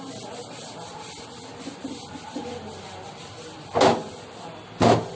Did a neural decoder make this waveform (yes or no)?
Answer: no